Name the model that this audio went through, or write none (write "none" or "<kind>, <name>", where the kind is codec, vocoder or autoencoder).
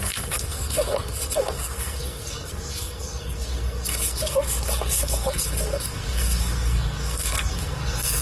codec, SNAC